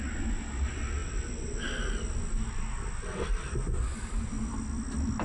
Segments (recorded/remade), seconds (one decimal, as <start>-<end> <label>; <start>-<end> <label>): 0.0-5.2 recorded